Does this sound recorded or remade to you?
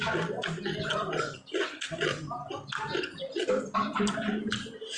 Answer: recorded